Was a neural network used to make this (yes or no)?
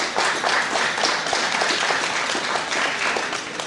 no